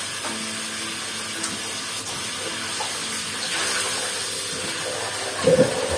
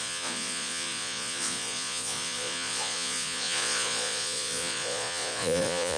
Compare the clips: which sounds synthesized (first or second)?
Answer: second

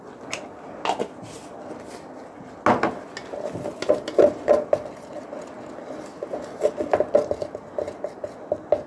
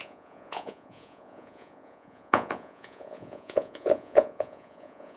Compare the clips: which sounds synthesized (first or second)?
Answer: second